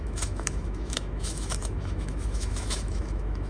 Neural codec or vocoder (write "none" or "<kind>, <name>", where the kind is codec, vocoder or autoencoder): autoencoder, DAC-VAE